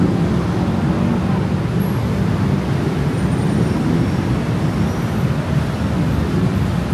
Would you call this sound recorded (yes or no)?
yes